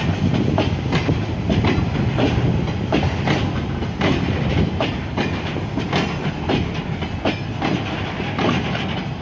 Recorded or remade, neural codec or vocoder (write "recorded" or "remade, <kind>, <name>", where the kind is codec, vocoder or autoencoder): recorded